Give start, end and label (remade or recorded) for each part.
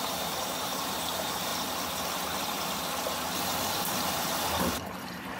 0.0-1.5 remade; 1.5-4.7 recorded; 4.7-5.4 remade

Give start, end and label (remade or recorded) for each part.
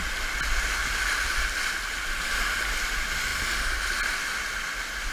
0.0-5.1 recorded